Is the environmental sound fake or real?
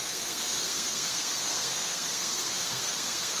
fake